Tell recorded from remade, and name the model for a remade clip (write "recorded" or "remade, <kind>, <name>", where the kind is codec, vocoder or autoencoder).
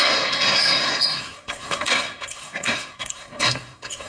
remade, codec, SNAC